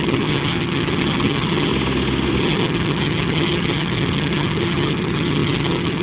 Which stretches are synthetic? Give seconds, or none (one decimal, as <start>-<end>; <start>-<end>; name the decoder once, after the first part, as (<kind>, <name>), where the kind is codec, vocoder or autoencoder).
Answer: 0.0-1.7 (vocoder, HiFi-GAN); 2.4-6.0